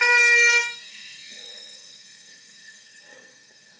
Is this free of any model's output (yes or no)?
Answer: no